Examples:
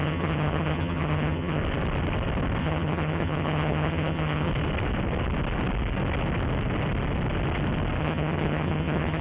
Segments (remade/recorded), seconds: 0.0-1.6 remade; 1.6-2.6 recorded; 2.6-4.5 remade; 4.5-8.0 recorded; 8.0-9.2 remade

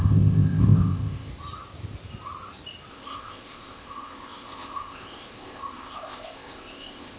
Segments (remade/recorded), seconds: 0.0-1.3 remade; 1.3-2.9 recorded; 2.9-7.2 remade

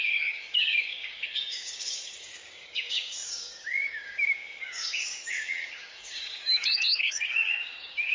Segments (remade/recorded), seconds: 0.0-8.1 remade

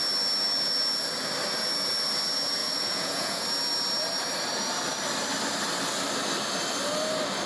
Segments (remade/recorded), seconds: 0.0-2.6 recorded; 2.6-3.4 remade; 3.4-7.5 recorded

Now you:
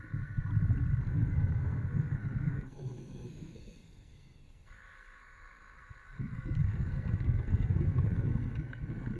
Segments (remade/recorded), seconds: 0.0-0.5 remade; 0.5-1.0 recorded; 1.0-9.2 remade

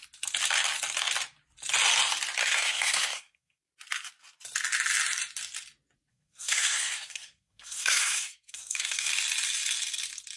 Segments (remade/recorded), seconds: 0.0-2.4 recorded; 2.4-3.6 remade; 3.6-6.1 recorded; 6.1-9.1 remade; 9.1-10.4 recorded

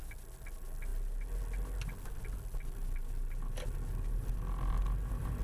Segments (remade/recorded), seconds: 0.0-5.4 recorded